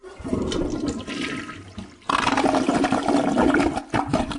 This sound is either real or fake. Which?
real